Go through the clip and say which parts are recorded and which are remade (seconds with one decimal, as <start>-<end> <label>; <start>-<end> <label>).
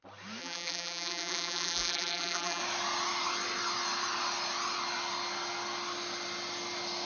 0.0-0.4 recorded; 0.4-2.6 remade; 2.6-7.0 recorded